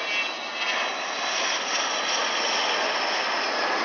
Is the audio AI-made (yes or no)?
no